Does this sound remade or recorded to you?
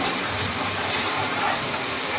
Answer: remade